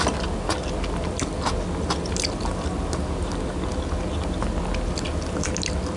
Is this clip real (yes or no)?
yes